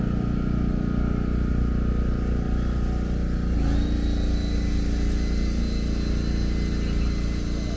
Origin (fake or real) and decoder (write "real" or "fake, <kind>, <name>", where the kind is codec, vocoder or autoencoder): real